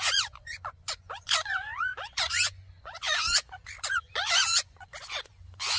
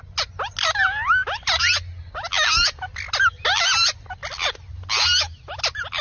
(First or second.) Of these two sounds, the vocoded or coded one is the first